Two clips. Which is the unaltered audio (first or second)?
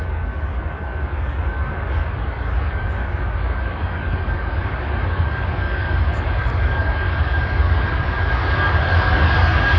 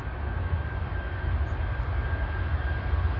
second